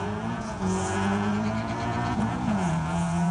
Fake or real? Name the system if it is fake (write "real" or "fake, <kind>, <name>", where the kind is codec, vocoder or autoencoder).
fake, vocoder, Vocos